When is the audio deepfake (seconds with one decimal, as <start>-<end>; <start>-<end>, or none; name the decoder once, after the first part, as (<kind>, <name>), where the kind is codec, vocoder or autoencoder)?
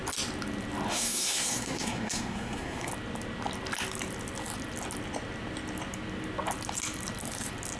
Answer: 0.9-2.9 (codec, SNAC)